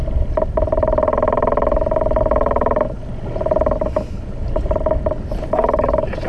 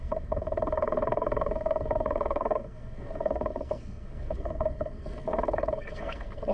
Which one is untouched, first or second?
first